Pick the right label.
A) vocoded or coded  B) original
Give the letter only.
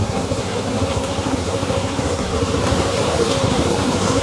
A